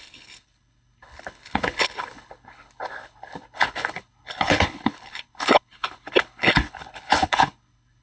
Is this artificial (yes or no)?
yes